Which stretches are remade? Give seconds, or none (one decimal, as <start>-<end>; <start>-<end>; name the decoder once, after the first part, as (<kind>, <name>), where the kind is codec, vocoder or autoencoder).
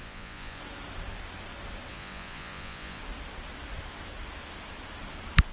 0.0-0.6 (vocoder, Vocos); 1.9-3.0